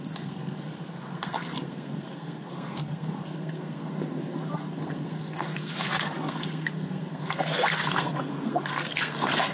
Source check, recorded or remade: remade